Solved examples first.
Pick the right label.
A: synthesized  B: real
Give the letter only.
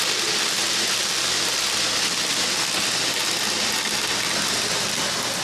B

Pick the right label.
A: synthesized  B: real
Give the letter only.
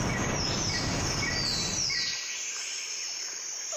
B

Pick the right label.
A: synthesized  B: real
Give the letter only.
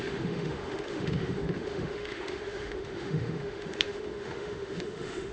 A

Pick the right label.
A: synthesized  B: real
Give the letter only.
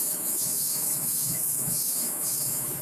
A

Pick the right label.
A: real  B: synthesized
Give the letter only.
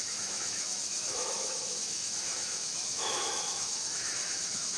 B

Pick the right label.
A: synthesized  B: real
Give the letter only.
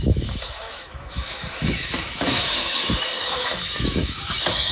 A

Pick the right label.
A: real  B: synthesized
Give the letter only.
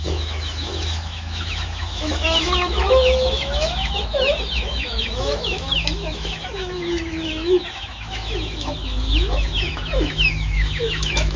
B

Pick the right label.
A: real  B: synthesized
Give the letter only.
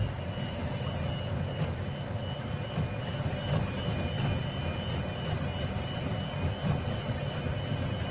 A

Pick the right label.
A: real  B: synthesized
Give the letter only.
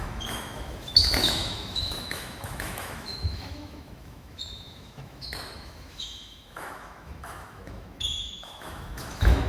B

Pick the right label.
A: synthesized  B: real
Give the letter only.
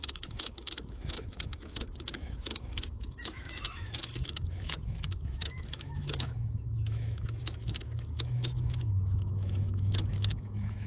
A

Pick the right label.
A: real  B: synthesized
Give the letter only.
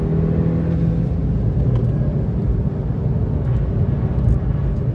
A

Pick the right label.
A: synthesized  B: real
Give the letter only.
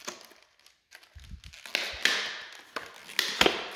B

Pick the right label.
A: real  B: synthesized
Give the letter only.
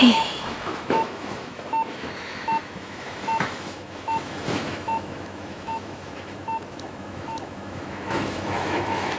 B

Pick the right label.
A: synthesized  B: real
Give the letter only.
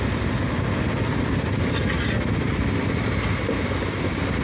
B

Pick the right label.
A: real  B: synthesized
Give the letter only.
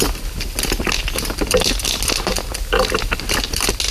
A